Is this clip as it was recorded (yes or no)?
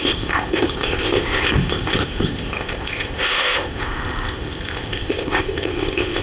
no